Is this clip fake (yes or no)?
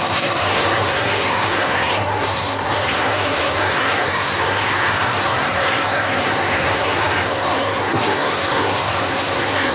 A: yes